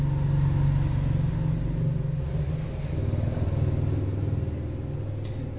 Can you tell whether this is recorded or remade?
recorded